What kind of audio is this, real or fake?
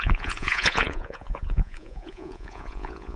fake